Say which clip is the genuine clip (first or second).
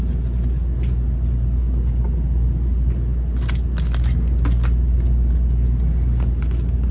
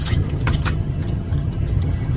first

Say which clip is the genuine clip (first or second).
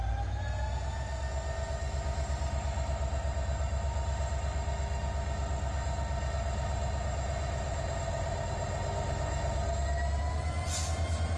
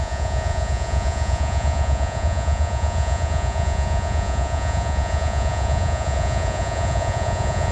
first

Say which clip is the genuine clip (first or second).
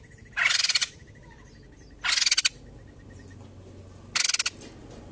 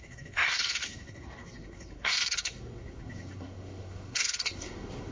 first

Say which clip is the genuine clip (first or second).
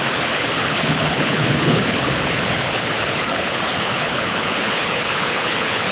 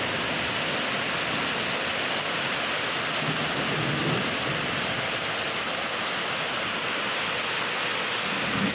second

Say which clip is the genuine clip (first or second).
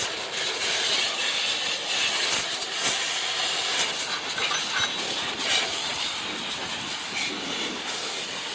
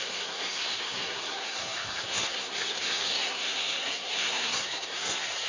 first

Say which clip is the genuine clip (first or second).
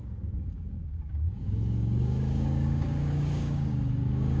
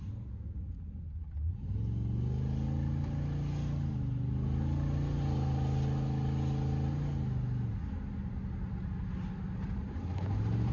second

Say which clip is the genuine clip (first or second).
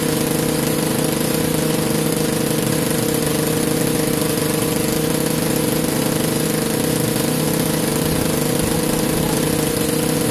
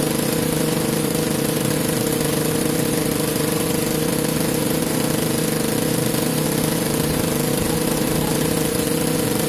first